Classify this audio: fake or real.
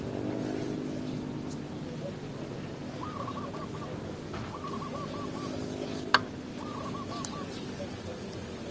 real